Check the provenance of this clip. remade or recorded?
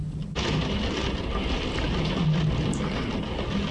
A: recorded